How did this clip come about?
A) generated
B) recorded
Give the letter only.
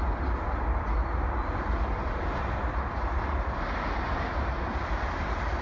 B